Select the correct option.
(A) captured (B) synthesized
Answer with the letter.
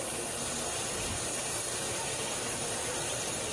A